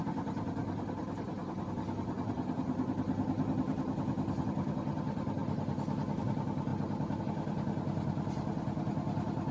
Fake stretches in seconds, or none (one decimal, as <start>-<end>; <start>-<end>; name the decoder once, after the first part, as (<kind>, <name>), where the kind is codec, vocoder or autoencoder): none